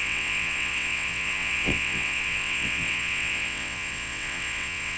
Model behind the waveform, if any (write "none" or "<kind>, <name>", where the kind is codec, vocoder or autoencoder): vocoder, WaveNeXt